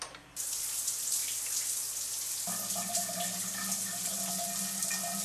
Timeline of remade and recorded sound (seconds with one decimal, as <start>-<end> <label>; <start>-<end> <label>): 0.0-5.2 recorded